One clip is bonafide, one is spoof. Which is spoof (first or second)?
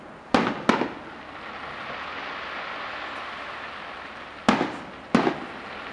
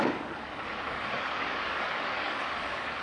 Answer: second